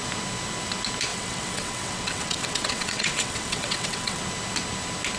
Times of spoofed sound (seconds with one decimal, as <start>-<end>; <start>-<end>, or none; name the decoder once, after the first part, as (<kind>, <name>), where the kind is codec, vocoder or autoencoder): 1.1-4.2 (vocoder, WaveNeXt)